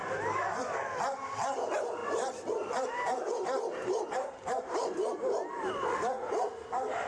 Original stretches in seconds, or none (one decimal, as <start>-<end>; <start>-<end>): 0.0-2.0; 5.7-7.1